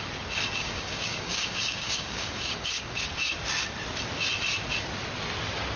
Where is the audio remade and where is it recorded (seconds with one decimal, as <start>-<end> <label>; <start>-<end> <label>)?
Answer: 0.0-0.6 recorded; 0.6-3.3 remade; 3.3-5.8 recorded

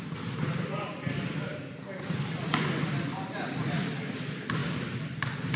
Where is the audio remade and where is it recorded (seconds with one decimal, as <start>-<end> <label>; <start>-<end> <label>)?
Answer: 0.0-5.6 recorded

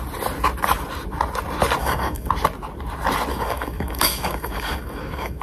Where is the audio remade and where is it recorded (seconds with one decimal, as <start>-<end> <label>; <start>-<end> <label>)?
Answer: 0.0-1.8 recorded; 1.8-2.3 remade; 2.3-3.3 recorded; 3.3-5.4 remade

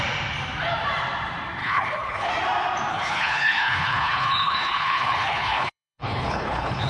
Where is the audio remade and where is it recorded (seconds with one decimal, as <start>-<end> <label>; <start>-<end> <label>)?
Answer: 0.0-1.6 recorded; 1.6-2.3 remade; 2.3-2.9 recorded; 2.9-6.9 remade

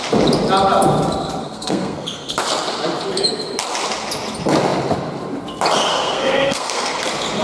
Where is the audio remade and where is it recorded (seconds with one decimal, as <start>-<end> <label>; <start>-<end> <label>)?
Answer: 0.0-1.4 recorded; 1.4-2.3 remade; 2.3-5.9 recorded; 5.9-7.0 remade; 7.0-7.4 recorded

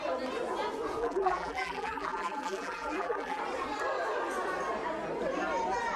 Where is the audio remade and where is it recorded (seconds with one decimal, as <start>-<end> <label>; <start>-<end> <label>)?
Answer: 0.0-1.0 recorded; 1.0-3.4 remade; 3.4-6.0 recorded